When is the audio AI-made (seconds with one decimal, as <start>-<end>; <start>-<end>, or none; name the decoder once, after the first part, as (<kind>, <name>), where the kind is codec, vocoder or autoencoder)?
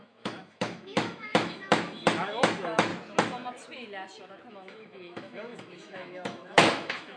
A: 0.0-2.9 (autoencoder, DAC-VAE); 4.5-7.2